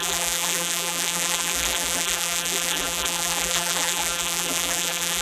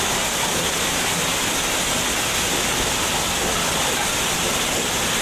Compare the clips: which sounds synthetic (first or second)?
first